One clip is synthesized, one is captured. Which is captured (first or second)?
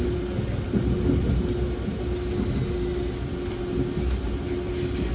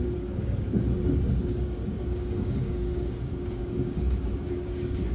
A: first